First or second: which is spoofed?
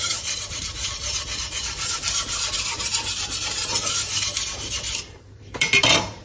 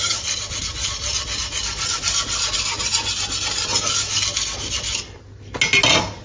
first